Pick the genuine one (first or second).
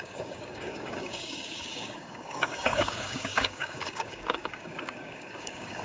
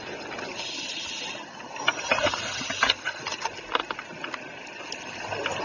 second